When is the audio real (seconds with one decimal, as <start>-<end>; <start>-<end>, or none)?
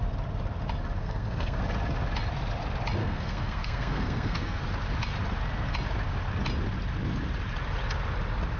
0.0-1.0; 1.6-3.0; 4.6-8.6